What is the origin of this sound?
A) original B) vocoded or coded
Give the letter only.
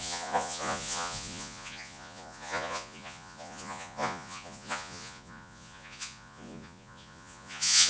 B